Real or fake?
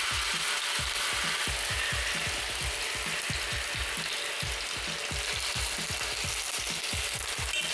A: real